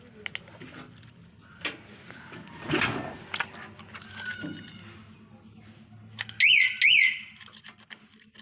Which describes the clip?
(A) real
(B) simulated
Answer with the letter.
A